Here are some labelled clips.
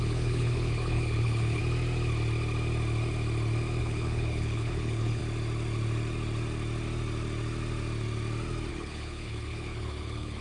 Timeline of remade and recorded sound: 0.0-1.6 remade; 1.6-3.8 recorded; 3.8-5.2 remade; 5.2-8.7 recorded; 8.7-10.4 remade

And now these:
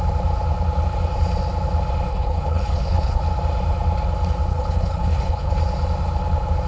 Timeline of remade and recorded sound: 0.0-2.1 recorded; 2.1-3.2 remade; 3.2-4.5 recorded; 4.5-5.5 remade; 5.5-6.7 recorded

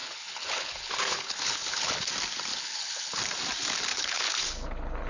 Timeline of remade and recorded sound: 0.0-2.1 remade; 2.1-2.5 recorded; 2.5-3.2 remade; 3.2-3.9 recorded; 3.9-5.1 remade

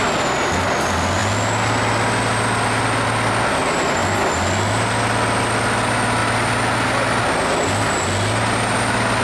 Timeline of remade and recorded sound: 0.0-9.2 recorded